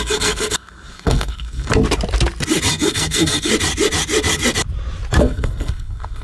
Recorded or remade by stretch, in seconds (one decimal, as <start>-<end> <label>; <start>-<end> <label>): 0.0-1.7 remade; 1.7-2.7 recorded; 2.7-3.5 remade; 3.5-5.2 recorded; 5.2-6.2 remade